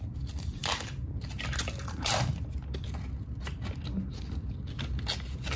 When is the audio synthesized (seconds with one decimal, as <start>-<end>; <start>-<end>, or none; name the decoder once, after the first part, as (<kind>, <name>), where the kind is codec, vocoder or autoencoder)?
none